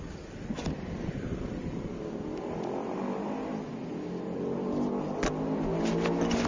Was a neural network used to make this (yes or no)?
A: no